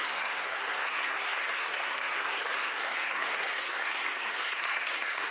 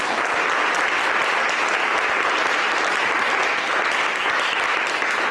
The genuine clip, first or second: second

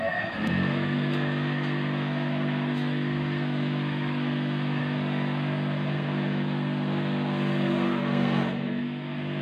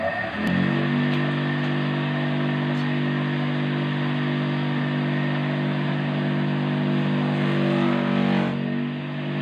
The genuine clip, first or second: second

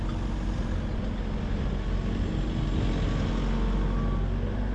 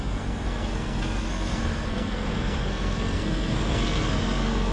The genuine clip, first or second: first